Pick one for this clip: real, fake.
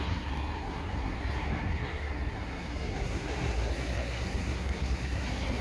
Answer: fake